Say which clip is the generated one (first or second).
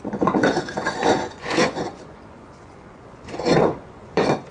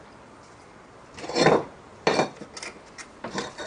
first